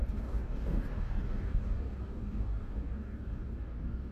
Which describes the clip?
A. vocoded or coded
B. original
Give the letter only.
A